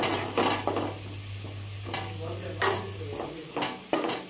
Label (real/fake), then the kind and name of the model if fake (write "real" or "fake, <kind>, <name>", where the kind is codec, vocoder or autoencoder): real